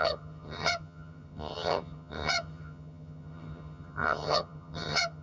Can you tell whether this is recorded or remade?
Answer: remade